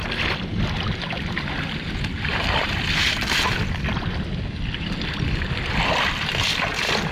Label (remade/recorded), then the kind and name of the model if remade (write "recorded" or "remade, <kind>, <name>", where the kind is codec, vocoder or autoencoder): recorded